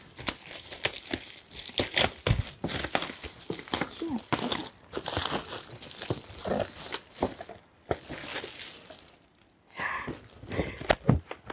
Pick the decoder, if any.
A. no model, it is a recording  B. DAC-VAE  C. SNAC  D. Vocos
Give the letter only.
A